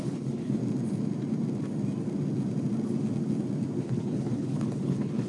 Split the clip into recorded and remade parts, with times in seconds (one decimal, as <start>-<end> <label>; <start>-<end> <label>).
0.0-0.6 remade; 0.6-3.8 recorded; 3.8-5.3 remade